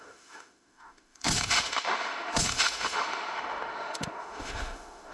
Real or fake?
fake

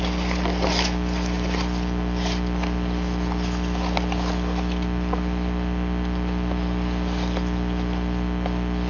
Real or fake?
real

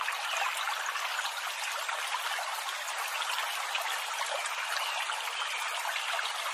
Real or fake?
real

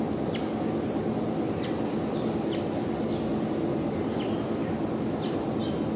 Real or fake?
real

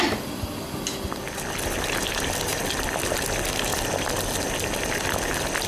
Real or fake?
real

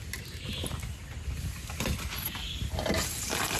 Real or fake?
real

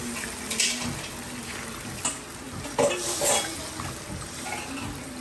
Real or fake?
real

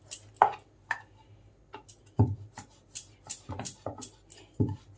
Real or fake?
real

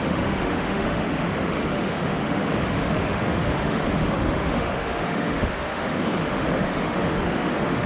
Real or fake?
fake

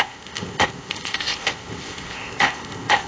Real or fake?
fake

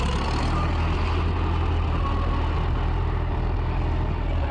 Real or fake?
real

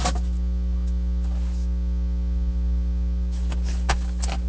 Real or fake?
real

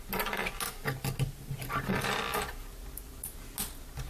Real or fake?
real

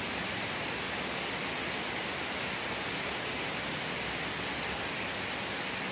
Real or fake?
real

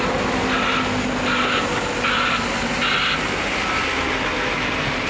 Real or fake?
real